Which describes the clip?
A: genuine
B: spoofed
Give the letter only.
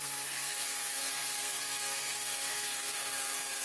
B